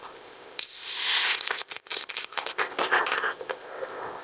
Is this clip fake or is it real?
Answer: fake